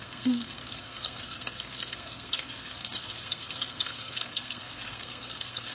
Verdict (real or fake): fake